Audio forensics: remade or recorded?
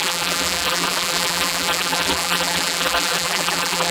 remade